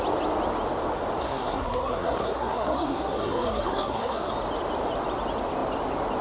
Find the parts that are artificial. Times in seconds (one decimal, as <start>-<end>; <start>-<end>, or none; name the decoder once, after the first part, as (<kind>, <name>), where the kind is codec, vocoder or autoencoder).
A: 1.2-4.3 (codec, SNAC)